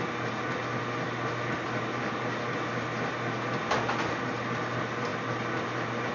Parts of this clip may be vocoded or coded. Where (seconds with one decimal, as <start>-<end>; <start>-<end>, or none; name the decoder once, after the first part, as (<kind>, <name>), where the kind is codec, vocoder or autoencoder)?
none